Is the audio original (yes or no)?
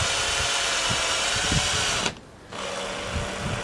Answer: yes